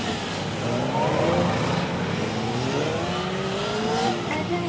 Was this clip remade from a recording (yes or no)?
no